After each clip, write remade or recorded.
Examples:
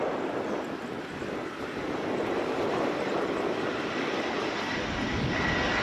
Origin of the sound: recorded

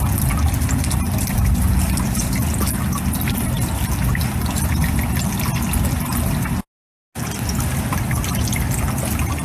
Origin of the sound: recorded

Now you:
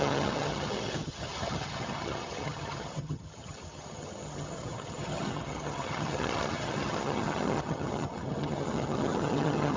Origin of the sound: remade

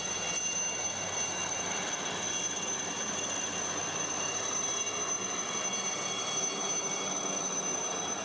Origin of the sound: recorded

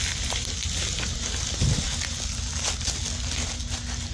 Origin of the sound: recorded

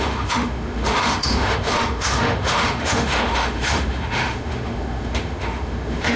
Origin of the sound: remade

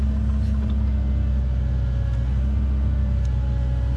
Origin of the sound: recorded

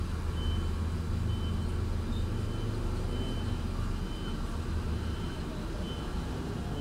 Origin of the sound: recorded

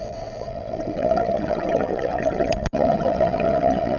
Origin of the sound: remade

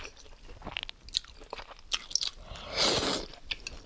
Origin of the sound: recorded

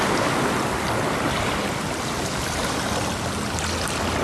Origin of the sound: recorded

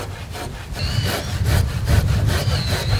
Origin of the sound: recorded